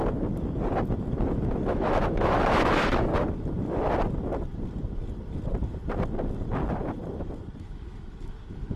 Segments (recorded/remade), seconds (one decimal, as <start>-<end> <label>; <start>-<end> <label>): 0.0-1.7 recorded; 1.7-3.1 remade; 3.1-7.6 recorded; 7.6-8.8 remade